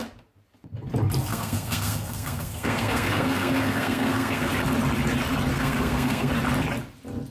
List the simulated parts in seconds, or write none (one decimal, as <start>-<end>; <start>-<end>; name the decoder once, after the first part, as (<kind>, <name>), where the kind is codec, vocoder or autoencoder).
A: 1.3-4.5 (codec, SNAC); 5.5-6.3